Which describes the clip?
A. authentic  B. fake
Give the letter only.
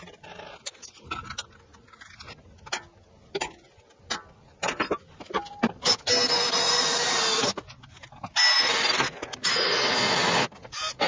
A